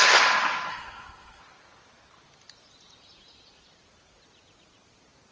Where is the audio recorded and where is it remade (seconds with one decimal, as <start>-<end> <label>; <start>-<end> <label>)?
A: 0.0-0.7 recorded; 0.7-1.4 remade; 1.4-5.3 recorded